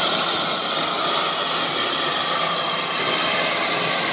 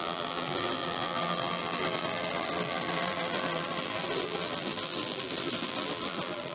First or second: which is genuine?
first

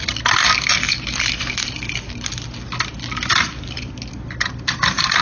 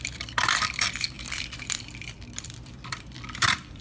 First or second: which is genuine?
first